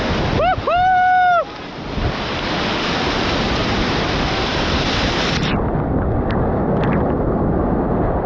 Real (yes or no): yes